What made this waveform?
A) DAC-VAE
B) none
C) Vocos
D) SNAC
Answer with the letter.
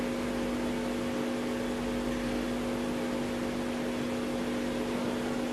B